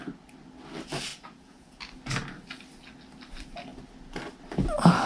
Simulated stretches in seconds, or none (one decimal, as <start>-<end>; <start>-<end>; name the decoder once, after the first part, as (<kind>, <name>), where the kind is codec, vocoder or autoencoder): 1.1-1.8 (vocoder, Vocos)